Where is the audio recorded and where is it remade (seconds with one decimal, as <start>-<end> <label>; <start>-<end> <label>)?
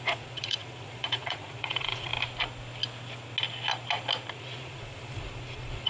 0.0-2.1 remade; 2.1-4.3 recorded; 4.3-5.9 remade